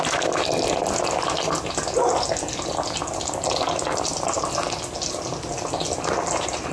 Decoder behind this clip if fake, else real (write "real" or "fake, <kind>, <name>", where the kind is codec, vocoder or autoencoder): real